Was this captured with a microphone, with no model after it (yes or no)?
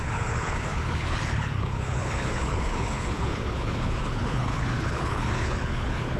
no